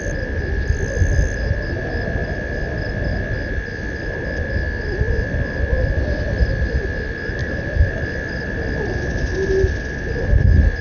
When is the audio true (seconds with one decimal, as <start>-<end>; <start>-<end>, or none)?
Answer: 0.0-10.8